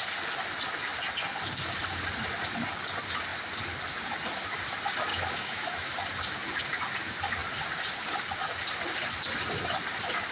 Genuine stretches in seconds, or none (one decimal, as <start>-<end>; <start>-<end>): 0.0-5.1; 5.9-10.3